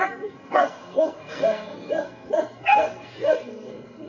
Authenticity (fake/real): fake